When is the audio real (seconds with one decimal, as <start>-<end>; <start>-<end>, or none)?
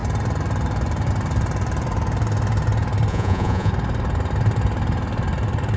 0.0-3.1; 3.7-5.8